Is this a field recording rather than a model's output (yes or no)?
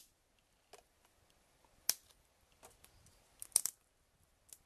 yes